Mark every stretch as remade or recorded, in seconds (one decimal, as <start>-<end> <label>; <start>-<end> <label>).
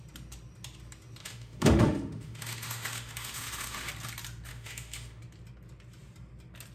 0.0-1.2 recorded; 1.2-3.9 remade; 3.9-4.5 recorded; 4.5-5.2 remade; 5.2-6.7 recorded